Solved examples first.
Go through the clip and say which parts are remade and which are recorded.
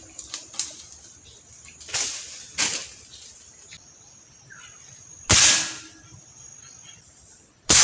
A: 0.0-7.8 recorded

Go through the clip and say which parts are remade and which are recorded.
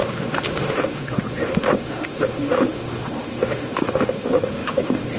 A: 0.0-5.2 remade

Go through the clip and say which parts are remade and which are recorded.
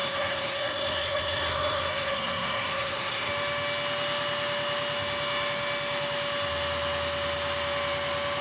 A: 0.0-3.3 remade; 3.3-8.4 recorded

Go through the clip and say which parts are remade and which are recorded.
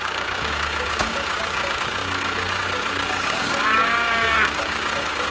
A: 0.0-5.3 remade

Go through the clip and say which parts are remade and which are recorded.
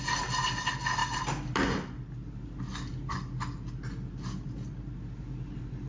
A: 0.0-5.9 recorded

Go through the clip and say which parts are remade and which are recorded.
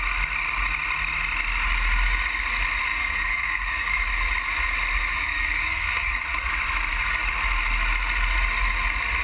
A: 0.0-2.9 recorded; 2.9-4.1 remade; 4.1-5.1 recorded; 5.1-6.1 remade; 6.1-9.2 recorded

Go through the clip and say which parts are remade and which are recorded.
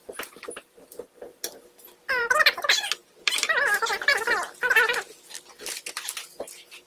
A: 0.0-0.8 remade; 0.8-3.0 recorded; 3.0-4.7 remade; 4.7-6.9 recorded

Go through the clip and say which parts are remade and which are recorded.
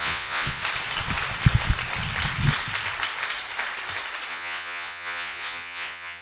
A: 0.0-0.6 remade; 0.6-4.3 recorded; 4.3-6.2 remade